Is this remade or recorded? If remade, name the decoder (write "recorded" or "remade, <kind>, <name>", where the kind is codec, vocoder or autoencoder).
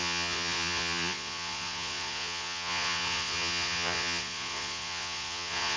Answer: remade, vocoder, Vocos